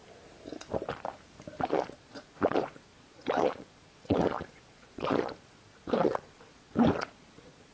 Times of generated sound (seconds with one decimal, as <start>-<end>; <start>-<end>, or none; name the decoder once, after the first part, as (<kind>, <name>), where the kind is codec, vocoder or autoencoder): 1.6-7.7 (vocoder, Vocos)